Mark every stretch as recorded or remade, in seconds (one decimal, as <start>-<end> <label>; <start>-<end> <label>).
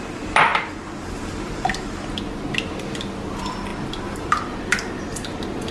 0.0-5.7 recorded